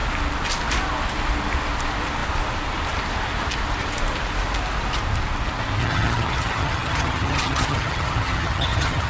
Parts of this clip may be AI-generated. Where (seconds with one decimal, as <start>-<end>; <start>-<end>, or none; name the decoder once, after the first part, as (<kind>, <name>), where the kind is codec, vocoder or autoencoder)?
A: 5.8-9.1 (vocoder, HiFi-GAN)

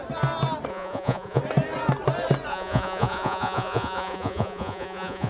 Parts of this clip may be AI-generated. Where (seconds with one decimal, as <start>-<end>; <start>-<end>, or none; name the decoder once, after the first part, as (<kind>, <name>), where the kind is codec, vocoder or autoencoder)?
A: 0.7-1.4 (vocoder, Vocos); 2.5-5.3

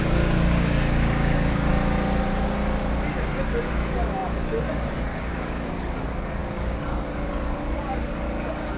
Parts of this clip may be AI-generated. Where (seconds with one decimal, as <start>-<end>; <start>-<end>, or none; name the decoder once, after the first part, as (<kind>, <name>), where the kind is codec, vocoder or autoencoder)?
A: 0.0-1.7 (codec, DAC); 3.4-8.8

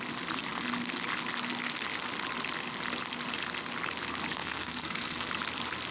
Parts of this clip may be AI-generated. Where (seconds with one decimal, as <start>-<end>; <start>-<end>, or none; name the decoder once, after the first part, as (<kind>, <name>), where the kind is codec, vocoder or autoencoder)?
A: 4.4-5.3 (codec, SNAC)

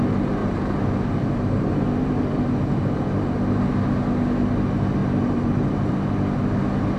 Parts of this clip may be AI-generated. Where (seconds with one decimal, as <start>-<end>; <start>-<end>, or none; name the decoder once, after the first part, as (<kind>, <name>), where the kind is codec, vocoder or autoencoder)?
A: 0.4-3.7 (vocoder, BigVGAN v2); 5.0-6.1

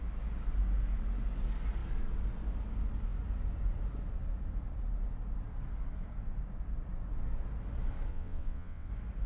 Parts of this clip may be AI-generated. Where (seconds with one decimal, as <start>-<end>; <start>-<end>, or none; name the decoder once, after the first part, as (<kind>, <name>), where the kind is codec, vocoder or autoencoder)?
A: 8.1-8.9 (vocoder, WaveNeXt)

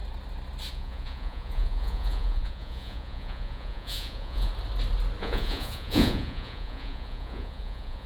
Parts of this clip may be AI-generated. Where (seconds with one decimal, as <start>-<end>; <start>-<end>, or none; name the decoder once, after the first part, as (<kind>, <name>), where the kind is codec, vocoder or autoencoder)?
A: 0.7-4.5 (vocoder, Vocos); 5.2-8.1